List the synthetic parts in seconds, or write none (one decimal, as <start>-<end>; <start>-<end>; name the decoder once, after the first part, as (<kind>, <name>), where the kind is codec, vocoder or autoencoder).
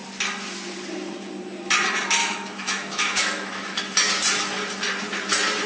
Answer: 2.2-3.8 (autoencoder, DAC-VAE)